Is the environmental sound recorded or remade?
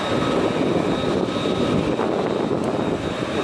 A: recorded